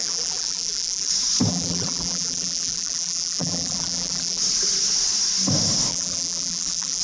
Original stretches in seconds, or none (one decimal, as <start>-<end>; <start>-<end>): 1.1-1.5; 4.4-5.9